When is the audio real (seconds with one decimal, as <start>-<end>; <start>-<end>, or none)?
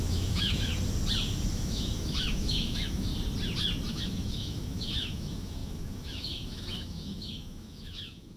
0.7-1.5; 3.1-3.9